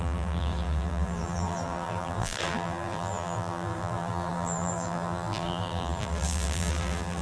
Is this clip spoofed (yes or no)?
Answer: yes